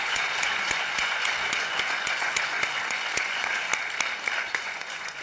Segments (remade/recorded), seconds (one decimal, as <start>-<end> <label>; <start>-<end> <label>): 0.0-3.7 remade; 3.7-4.4 recorded; 4.4-5.2 remade